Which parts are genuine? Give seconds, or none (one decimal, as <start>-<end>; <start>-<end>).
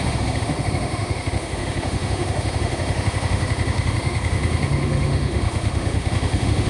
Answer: none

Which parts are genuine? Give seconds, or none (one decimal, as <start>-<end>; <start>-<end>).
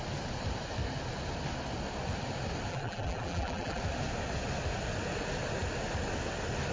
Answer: 0.0-2.7; 3.8-6.7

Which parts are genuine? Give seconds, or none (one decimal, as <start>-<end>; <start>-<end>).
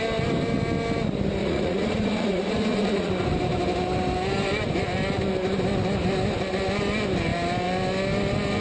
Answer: 0.0-1.4; 3.1-8.6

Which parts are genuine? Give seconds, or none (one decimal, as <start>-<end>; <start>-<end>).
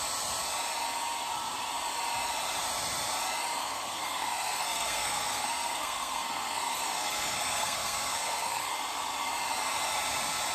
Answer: 0.0-3.6; 8.7-10.5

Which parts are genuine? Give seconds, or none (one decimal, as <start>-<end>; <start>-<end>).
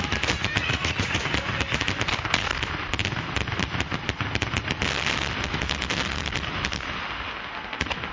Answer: 0.0-0.6; 1.2-8.1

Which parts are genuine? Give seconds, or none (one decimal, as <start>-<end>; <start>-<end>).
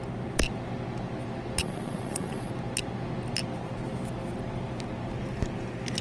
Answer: 0.0-1.6; 2.5-6.0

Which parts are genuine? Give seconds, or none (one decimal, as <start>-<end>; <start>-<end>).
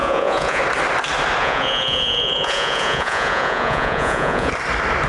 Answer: 0.6-1.4; 4.5-5.1